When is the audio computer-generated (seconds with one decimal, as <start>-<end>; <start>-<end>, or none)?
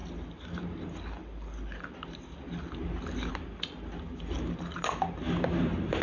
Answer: none